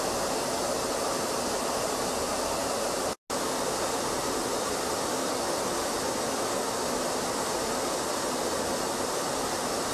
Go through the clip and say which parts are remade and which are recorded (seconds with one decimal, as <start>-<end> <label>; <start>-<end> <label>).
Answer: 0.0-2.6 recorded; 2.6-3.1 remade; 3.1-9.9 recorded